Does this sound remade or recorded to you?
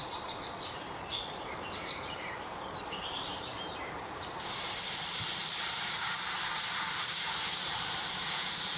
remade